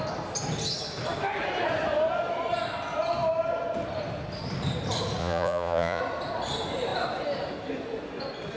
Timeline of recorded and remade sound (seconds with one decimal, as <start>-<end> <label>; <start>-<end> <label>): 0.0-5.2 recorded; 5.2-6.0 remade; 6.0-8.6 recorded